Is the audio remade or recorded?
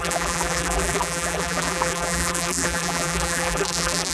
remade